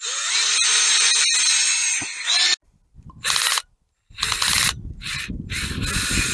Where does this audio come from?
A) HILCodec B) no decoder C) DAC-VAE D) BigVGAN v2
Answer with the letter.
B